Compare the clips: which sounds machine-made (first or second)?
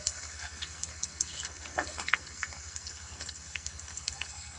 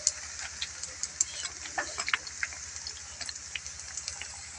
first